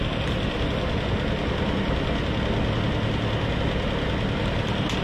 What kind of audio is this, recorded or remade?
recorded